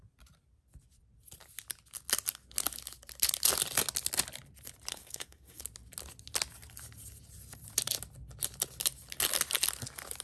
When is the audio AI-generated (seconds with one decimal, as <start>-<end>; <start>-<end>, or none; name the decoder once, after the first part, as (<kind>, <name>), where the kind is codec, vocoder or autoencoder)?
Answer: 4.9-5.6 (codec, SNAC)